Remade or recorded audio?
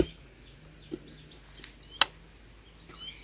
recorded